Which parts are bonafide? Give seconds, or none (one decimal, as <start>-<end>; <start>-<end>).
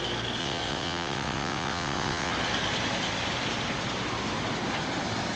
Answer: 0.0-0.4; 2.3-5.4